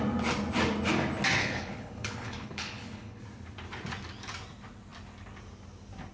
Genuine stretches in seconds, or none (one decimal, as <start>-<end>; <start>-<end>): 0.0-1.4; 3.2-6.1